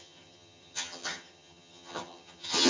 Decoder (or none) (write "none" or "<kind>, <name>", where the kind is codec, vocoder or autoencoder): vocoder, HiFi-GAN